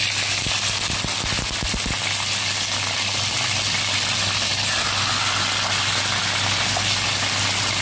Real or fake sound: real